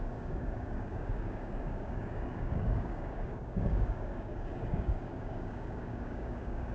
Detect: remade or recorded remade